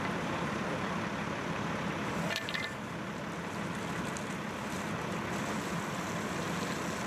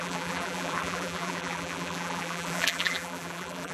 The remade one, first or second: second